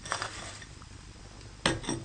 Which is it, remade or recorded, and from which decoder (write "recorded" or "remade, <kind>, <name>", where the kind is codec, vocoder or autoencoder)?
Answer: recorded